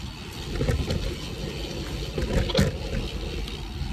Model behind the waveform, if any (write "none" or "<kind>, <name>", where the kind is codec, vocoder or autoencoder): none